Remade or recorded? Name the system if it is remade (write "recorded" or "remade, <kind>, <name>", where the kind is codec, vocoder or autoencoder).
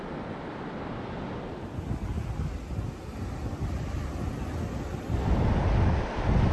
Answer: recorded